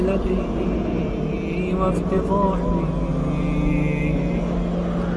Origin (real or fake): real